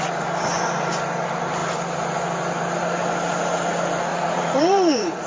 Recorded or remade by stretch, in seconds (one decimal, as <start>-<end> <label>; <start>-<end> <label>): 0.0-4.1 recorded; 4.1-5.3 remade